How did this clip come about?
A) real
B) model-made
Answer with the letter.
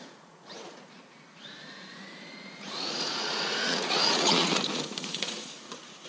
B